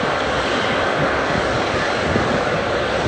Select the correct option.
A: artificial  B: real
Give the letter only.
A